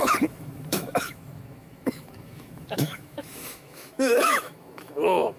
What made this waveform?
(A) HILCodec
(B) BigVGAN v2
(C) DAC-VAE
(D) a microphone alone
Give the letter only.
C